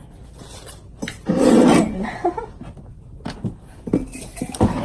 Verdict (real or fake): real